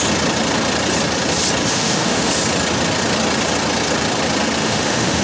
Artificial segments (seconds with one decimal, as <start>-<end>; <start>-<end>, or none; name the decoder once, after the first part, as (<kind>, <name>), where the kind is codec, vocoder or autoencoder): 1.7-2.3 (autoencoder, DAC-VAE); 4.6-5.2